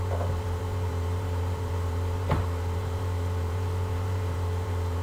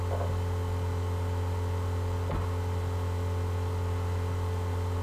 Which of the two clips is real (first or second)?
second